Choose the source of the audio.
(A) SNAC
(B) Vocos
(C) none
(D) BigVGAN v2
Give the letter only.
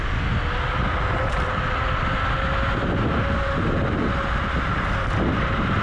C